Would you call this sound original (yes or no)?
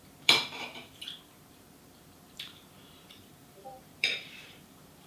no